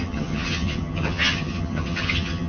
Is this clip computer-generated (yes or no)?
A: yes